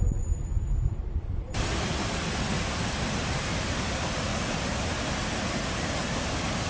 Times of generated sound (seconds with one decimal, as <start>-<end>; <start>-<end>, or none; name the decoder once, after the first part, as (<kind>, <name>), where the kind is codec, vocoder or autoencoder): none